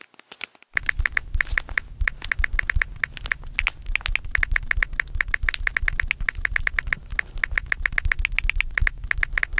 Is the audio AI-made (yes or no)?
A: no